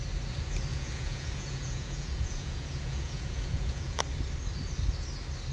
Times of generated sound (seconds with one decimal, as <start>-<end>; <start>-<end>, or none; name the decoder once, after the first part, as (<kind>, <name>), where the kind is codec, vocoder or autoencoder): 0.7-4.0 (vocoder, Vocos)